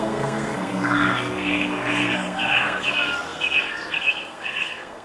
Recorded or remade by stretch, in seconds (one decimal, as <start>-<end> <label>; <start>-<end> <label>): 0.0-5.0 remade